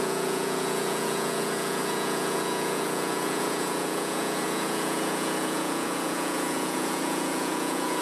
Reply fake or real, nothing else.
fake